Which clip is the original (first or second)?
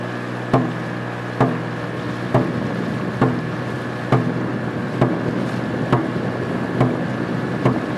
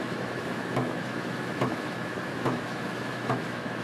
first